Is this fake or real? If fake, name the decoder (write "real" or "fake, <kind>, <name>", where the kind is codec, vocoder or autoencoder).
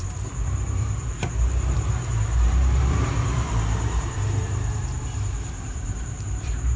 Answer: fake, vocoder, BigVGAN v2